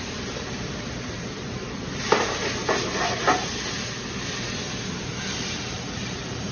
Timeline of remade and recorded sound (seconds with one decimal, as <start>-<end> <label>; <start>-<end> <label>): 0.0-2.6 remade; 2.6-5.0 recorded; 5.0-6.5 remade